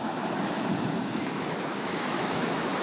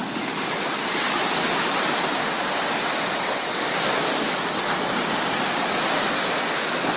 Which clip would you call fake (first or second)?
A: first